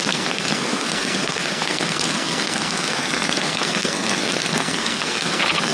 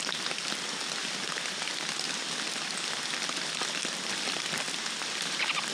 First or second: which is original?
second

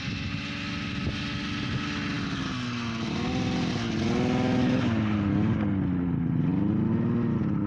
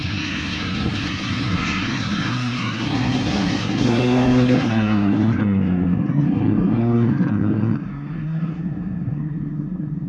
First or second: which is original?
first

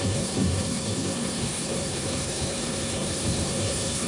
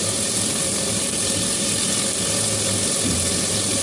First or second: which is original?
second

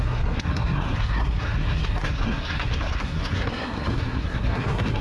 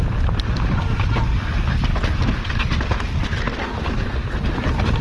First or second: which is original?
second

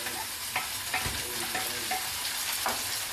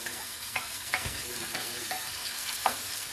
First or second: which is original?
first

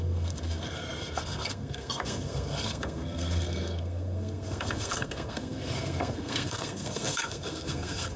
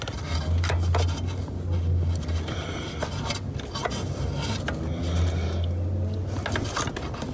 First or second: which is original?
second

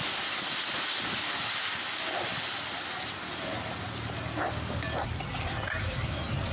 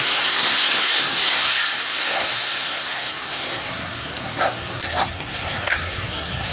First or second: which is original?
first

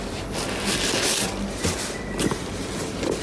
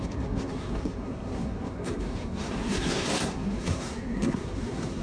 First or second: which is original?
first